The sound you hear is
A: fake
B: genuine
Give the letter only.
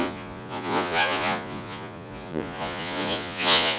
A